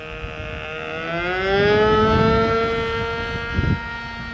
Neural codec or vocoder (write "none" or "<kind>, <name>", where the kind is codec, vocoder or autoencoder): none